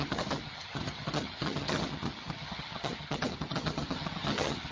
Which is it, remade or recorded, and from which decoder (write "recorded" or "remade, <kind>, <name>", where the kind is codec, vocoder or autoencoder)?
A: remade, vocoder, HiFi-GAN